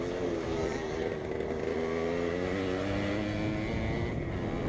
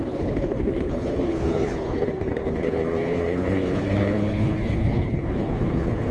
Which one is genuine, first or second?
first